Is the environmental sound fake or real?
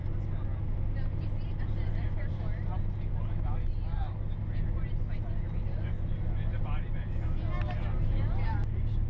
real